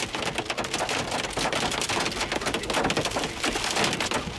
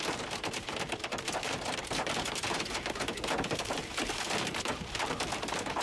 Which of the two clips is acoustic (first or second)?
first